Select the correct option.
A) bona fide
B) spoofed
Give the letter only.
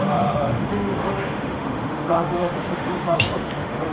B